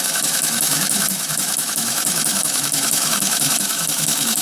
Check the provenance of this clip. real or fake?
fake